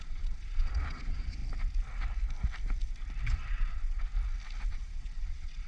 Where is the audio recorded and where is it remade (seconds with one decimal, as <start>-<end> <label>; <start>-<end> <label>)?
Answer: 0.0-1.4 remade; 1.4-3.5 recorded; 3.5-4.1 remade; 4.1-4.7 recorded; 4.7-5.7 remade